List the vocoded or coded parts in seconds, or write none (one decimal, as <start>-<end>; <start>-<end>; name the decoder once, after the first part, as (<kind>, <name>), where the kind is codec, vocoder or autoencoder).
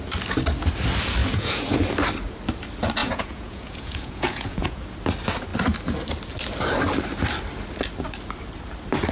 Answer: 1.2-1.8 (vocoder, Vocos); 3.0-4.8